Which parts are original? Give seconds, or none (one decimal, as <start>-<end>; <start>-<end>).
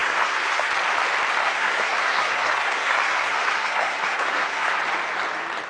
0.7-1.4; 4.8-5.7